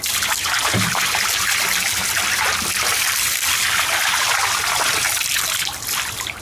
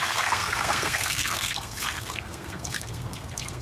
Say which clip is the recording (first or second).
first